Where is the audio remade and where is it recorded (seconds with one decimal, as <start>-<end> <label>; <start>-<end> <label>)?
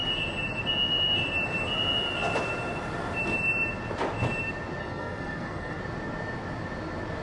0.0-4.8 recorded; 4.8-5.8 remade; 5.8-7.2 recorded